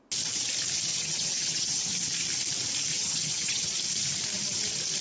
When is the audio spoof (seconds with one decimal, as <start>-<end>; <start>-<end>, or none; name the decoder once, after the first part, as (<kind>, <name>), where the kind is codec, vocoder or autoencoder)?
0.9-1.9 (vocoder, HiFi-GAN); 2.9-3.7